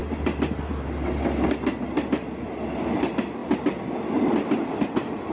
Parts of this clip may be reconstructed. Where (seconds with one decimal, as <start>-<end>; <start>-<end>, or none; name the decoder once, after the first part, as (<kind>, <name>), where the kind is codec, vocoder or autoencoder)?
none